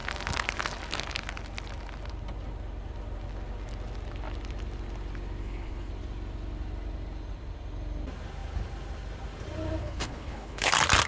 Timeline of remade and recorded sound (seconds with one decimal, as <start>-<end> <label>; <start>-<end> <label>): 0.0-5.4 recorded; 5.4-5.9 remade; 5.9-9.8 recorded; 9.8-10.7 remade; 10.7-11.1 recorded